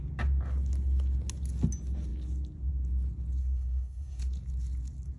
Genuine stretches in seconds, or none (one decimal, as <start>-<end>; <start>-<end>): 0.0-3.4; 4.2-5.2